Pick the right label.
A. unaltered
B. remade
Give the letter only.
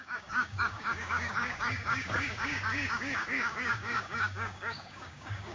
B